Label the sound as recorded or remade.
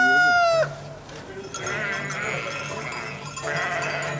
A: recorded